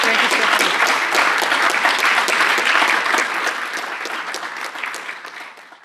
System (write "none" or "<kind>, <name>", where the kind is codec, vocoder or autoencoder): none